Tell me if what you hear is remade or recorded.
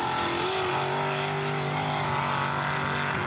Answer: recorded